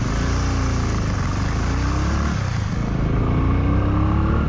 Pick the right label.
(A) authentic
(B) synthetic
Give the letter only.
A